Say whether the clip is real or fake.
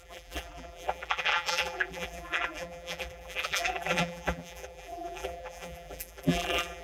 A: fake